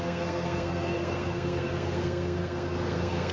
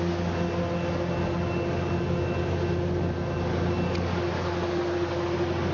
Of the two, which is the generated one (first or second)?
first